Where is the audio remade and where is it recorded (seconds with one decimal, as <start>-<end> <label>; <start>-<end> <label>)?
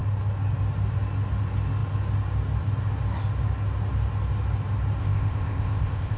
0.0-5.0 recorded; 5.0-6.2 remade